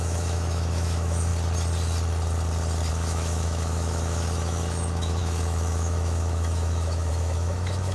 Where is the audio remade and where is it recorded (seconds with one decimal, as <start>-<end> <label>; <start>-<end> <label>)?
0.0-1.3 remade; 1.3-2.9 recorded; 2.9-7.9 remade

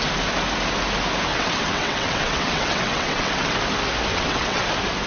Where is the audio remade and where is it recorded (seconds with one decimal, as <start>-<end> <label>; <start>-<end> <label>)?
0.0-1.3 recorded; 1.3-3.6 remade; 3.6-4.1 recorded; 4.1-4.6 remade; 4.6-5.1 recorded